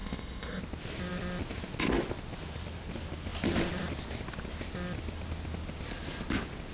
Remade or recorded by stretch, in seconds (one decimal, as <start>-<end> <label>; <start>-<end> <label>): 0.0-0.6 remade; 0.6-6.7 recorded